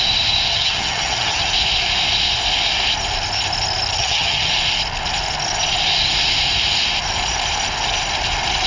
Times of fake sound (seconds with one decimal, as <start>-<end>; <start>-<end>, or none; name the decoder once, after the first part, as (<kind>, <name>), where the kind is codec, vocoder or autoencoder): 0.5-1.5 (vocoder, HiFi-GAN); 4.0-4.5